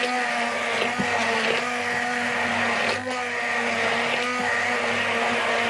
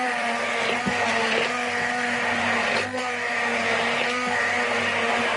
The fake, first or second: second